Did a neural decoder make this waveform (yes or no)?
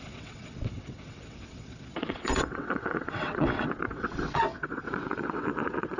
yes